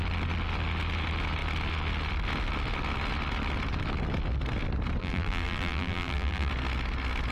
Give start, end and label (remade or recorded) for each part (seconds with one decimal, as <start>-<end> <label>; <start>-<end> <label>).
0.0-5.0 recorded; 5.0-6.5 remade; 6.5-7.3 recorded